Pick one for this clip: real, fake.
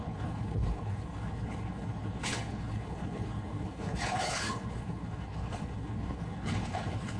fake